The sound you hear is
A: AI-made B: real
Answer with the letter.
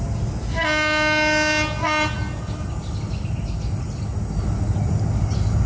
B